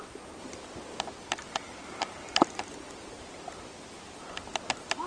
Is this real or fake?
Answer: real